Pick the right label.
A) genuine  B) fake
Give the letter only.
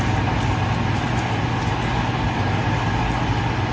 A